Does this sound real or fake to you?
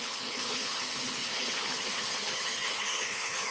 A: fake